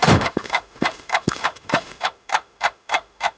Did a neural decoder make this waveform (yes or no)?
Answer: yes